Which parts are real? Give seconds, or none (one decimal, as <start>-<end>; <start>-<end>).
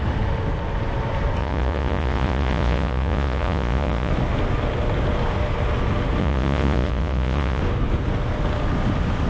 0.0-1.4; 4.1-6.2; 7.6-9.3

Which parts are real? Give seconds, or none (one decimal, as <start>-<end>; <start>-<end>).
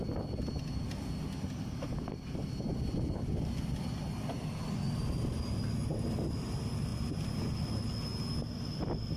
0.0-2.7; 3.3-9.2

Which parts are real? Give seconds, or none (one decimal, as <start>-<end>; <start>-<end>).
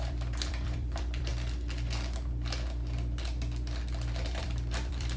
1.3-4.4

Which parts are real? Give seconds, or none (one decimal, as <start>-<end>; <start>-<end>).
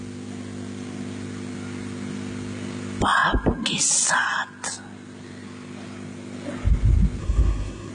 0.0-7.2